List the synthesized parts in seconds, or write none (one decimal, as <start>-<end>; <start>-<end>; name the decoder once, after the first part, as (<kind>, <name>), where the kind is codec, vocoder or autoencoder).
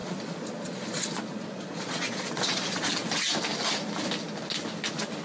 0.0-2.9 (vocoder, Vocos)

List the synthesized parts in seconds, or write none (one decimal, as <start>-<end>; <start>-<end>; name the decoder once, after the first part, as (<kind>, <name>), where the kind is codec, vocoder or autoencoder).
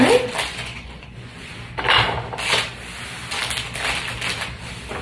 0.5-1.6 (vocoder, Vocos)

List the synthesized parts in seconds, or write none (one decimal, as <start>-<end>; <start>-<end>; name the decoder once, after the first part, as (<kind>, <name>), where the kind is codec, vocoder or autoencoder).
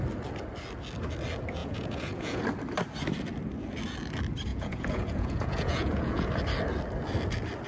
1.6-2.4 (vocoder, Vocos); 4.5-6.3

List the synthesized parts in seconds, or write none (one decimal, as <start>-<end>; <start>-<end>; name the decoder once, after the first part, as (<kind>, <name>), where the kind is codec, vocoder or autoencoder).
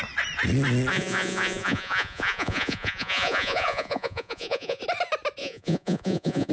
0.9-4.8 (vocoder, Vocos); 5.4-6.5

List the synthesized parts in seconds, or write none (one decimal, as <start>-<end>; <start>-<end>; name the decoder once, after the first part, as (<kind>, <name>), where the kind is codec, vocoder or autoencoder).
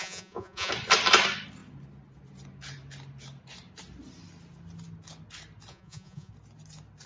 0.0-0.7 (vocoder, Vocos); 5.7-6.3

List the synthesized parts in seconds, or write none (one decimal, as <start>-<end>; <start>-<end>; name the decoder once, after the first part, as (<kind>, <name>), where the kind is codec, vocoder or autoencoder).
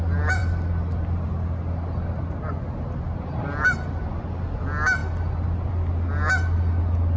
none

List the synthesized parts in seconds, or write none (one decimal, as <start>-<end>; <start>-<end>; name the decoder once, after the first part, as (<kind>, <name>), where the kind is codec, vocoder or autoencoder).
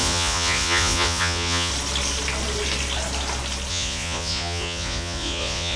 0.0-1.7 (vocoder, Vocos); 3.7-5.8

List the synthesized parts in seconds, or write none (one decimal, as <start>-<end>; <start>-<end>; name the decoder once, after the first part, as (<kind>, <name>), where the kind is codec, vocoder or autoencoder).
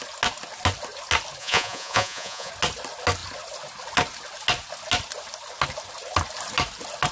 1.4-2.5 (vocoder, Vocos)